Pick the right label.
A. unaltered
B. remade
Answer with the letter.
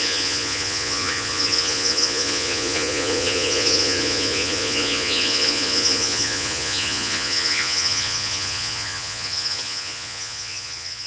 B